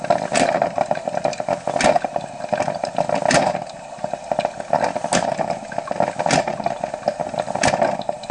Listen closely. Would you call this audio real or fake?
real